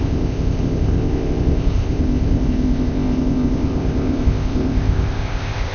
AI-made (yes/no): yes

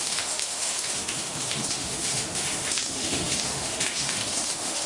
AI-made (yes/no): yes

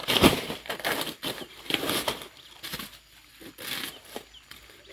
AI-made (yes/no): yes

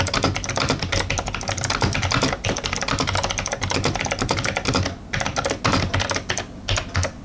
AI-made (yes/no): no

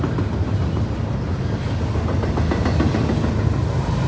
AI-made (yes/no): no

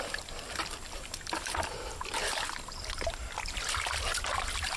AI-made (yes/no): yes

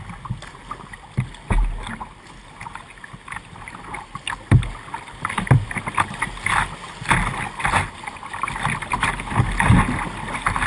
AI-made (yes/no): no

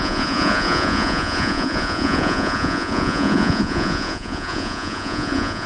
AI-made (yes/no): yes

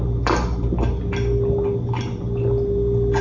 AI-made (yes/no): no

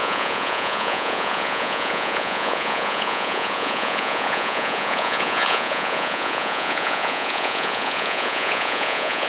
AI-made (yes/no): yes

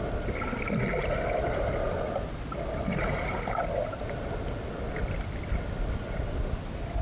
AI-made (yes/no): no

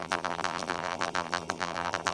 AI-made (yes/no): yes